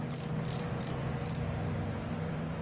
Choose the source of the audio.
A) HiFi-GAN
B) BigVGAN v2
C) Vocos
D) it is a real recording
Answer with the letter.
B